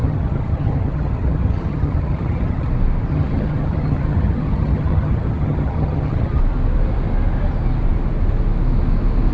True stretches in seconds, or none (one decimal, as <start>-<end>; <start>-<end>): 2.7-3.1; 6.4-9.3